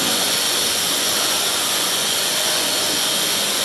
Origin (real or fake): fake